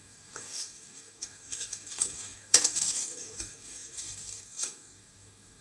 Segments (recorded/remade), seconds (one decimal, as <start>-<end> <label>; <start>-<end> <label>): 0.0-5.6 remade